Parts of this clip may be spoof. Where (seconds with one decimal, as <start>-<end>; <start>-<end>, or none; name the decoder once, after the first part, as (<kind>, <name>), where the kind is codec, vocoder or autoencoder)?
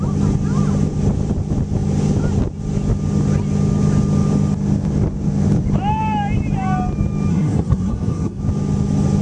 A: 7.3-8.4 (codec, SNAC)